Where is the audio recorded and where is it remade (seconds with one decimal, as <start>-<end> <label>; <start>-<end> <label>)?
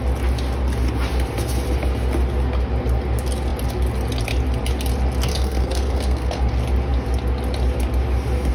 0.0-5.3 recorded; 5.3-6.5 remade; 6.5-8.5 recorded